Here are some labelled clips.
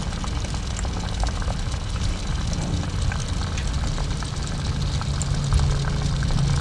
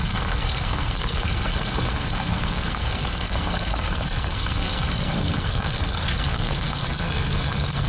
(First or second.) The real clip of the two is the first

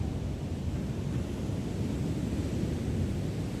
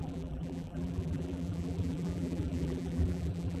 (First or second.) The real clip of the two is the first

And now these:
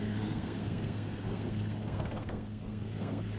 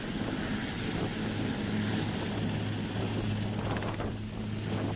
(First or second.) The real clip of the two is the second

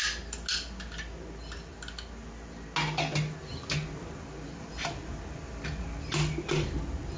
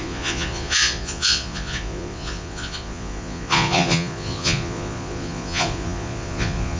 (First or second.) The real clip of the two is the first